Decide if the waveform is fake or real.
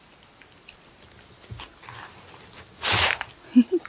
real